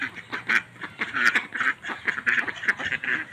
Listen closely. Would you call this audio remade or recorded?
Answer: recorded